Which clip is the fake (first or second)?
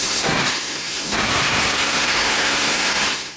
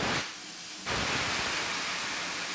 first